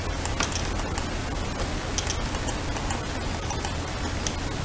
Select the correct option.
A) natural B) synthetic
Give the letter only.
A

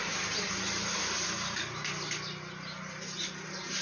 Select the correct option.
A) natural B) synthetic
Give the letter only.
A